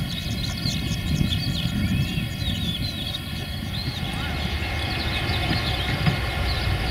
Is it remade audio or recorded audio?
recorded